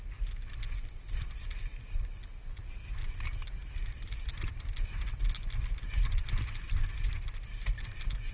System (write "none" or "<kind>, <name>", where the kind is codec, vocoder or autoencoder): none